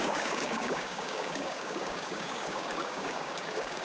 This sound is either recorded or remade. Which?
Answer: remade